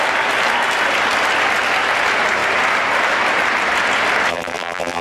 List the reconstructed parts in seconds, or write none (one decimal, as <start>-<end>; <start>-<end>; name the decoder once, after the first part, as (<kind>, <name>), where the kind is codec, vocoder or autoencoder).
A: 4.3-5.0 (vocoder, BigVGAN v2)